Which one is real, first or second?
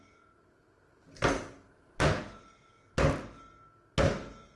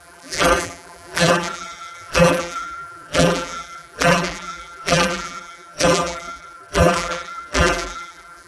first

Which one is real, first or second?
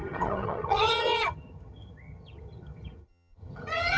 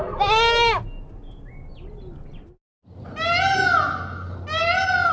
second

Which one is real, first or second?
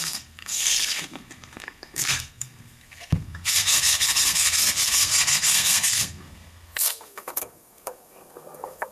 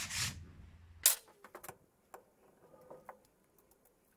second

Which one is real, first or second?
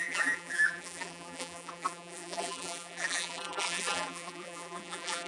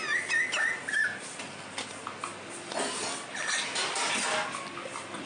second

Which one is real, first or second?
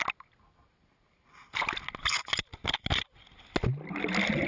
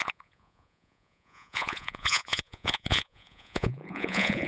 first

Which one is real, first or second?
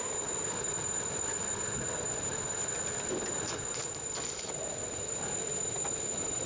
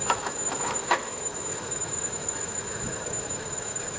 first